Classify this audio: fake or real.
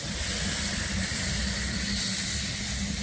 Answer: real